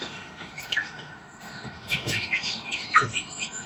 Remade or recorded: remade